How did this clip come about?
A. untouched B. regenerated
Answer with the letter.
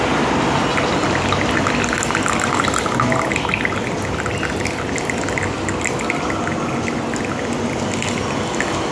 A